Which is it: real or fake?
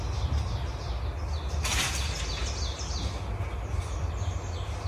real